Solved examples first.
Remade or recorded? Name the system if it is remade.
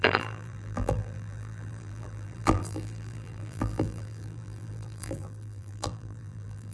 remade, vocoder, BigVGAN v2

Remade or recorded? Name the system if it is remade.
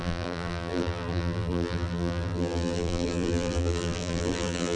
remade, vocoder, BigVGAN v2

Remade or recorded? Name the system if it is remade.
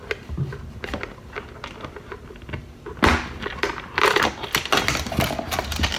recorded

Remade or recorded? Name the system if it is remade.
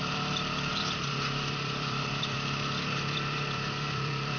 remade, vocoder, BigVGAN v2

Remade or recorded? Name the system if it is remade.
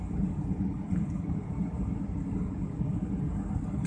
recorded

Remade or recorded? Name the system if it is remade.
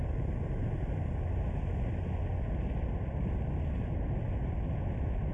recorded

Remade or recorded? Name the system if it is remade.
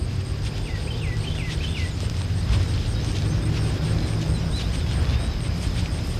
recorded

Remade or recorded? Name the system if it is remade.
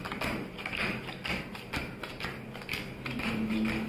recorded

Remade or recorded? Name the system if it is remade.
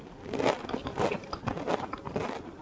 recorded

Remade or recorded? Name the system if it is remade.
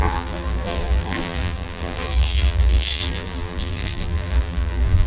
remade, vocoder, BigVGAN v2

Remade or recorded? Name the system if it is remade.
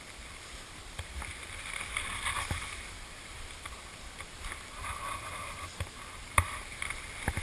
remade, vocoder, BigVGAN v2